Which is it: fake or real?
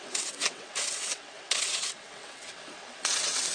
fake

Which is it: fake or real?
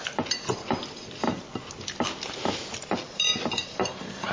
real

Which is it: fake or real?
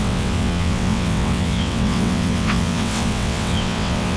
fake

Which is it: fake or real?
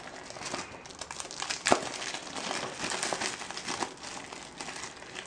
real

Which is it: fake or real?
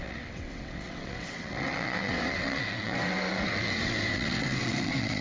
fake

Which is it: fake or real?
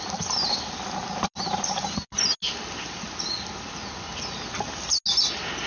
real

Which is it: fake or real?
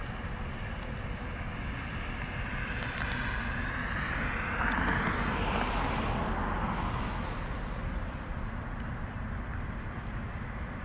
real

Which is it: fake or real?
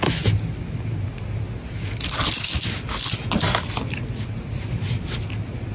real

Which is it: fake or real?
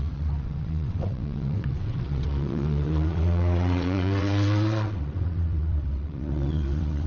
fake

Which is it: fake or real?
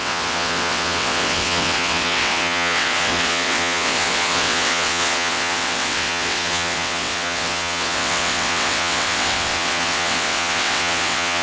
fake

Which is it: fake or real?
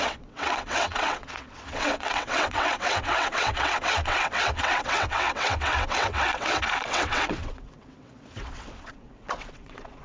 fake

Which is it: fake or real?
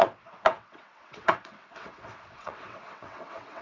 fake